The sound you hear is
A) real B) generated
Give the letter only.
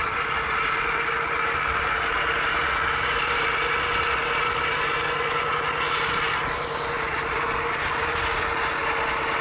A